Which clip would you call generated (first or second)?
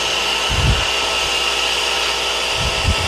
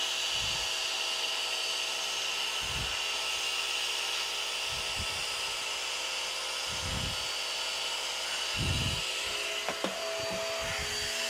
first